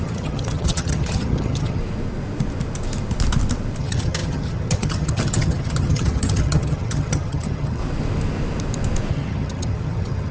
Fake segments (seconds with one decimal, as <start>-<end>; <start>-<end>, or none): 0.0-1.8; 3.8-7.8; 9.1-10.3